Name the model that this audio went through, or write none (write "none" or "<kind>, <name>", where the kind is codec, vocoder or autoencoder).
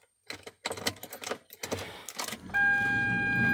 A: none